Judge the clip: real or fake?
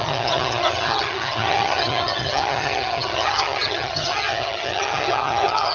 fake